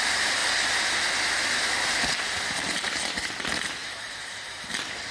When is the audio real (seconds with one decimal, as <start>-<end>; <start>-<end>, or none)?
0.4-2.5